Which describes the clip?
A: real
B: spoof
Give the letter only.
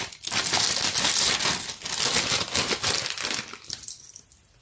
A